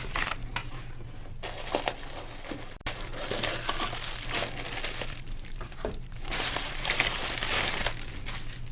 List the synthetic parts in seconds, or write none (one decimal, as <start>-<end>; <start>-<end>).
0.0-0.6; 5.3-7.2